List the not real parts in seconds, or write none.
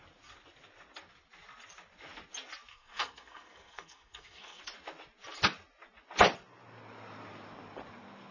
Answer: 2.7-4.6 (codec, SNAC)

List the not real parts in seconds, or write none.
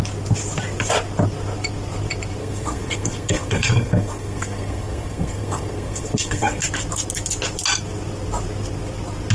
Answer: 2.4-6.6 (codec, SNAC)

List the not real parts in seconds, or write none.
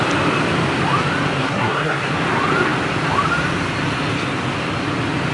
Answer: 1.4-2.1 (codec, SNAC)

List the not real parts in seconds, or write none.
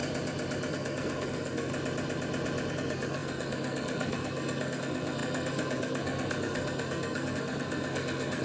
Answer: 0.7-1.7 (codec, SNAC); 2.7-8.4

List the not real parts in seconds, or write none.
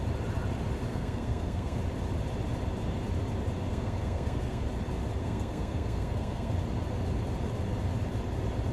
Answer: 0.9-1.8 (codec, SNAC); 3.7-4.6; 5.2-6.5